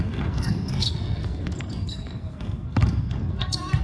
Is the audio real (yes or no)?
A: no